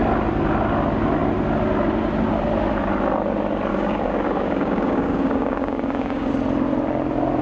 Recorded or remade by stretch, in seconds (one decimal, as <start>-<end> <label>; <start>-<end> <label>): 0.0-3.7 recorded; 3.7-6.3 remade; 6.3-7.4 recorded